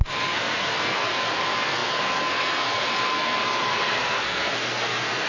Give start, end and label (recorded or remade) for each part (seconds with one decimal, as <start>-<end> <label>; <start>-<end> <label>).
0.0-5.3 remade